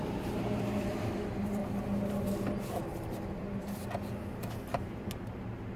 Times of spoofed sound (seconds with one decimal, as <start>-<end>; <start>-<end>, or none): 0.0-1.6; 2.8-3.8; 4.7-5.8